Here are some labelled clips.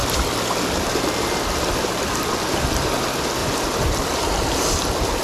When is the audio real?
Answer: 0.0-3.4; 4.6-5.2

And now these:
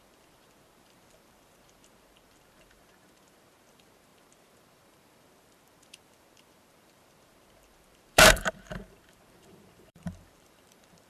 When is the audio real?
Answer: none

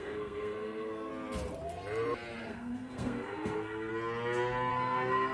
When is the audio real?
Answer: 1.1-2.4; 3.9-4.7